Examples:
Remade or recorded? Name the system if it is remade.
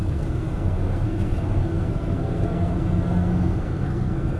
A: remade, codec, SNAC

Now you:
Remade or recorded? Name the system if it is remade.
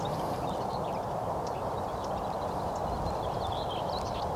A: recorded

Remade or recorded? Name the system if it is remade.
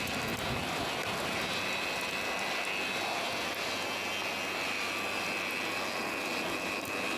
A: recorded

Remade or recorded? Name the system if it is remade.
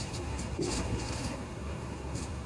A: remade, codec, SNAC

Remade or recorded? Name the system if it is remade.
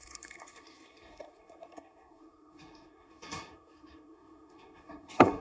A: remade, codec, SNAC